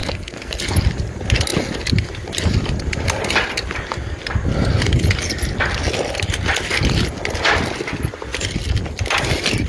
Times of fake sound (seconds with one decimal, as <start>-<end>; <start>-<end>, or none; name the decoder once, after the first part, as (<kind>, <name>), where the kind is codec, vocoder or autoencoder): 0.0-0.6 (codec, SNAC)